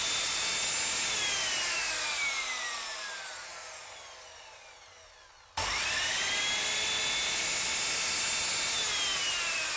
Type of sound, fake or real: real